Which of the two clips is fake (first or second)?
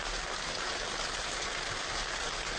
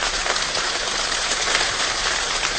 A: second